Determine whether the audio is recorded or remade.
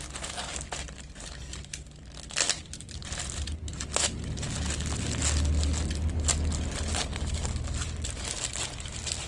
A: recorded